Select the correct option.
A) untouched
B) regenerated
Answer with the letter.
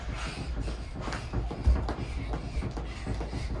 A